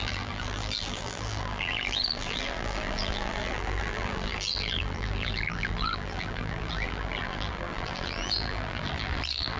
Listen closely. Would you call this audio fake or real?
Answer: fake